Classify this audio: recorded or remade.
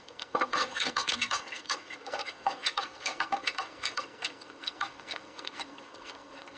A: remade